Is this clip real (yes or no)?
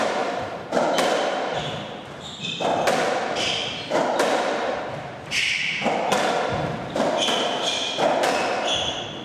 yes